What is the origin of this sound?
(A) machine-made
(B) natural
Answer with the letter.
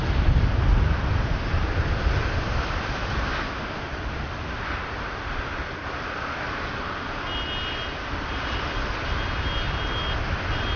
B